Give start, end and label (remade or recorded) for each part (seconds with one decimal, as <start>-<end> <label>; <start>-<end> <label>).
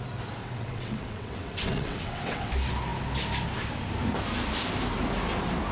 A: 0.0-0.4 recorded; 0.4-2.5 remade; 2.5-5.7 recorded